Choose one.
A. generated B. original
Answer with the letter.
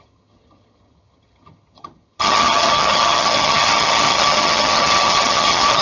A